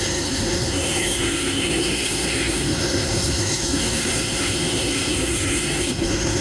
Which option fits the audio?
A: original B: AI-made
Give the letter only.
B